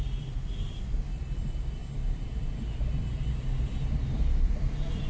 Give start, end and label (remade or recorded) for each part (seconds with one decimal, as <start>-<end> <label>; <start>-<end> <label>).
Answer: 0.0-5.1 recorded